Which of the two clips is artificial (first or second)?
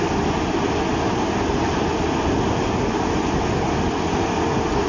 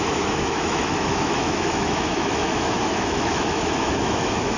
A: second